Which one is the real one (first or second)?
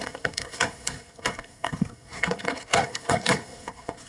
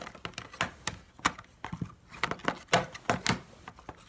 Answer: second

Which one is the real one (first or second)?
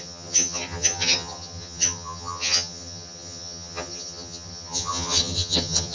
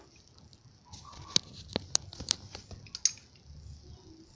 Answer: second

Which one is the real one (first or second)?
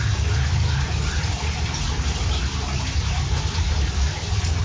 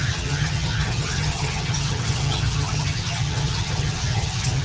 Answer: first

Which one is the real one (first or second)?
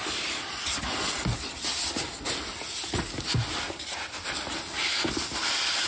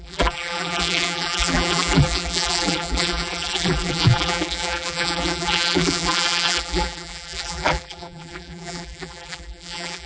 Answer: first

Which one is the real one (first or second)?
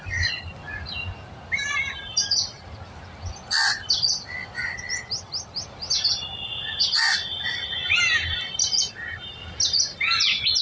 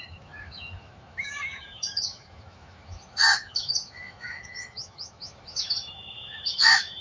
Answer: first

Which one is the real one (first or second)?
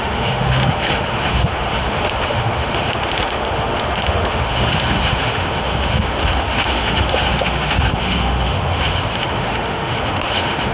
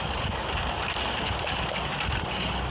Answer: second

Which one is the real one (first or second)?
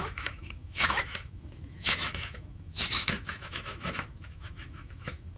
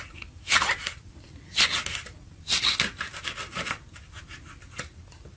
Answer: second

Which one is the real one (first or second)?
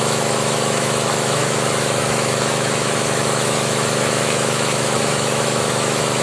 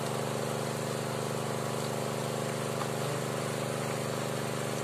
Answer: second